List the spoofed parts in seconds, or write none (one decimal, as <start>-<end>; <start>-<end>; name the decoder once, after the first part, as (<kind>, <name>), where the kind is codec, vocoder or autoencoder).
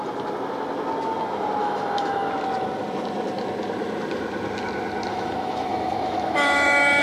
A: 1.6-2.3 (autoencoder, DAC-VAE); 5.1-7.0